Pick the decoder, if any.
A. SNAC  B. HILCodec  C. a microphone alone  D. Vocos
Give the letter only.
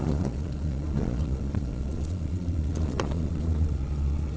D